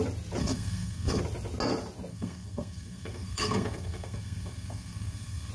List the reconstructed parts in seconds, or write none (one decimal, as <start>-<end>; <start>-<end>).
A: 0.4-1.2; 2.1-5.5